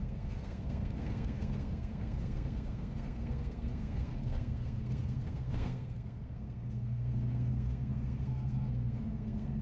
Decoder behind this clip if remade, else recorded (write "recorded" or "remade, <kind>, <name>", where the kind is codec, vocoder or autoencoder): remade, codec, SNAC